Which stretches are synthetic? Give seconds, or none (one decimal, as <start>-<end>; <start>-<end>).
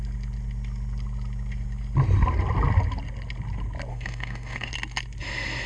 3.9-4.7